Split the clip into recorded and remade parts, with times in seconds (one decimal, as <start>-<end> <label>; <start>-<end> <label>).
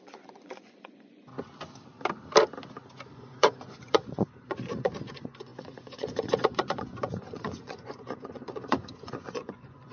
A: 0.0-1.3 remade; 1.3-3.1 recorded; 3.1-9.9 remade